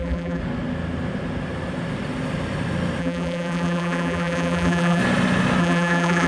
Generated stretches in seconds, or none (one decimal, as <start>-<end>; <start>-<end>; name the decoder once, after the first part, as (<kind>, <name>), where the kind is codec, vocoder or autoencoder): 0.0-0.4 (vocoder, BigVGAN v2); 3.0-5.0; 5.6-6.3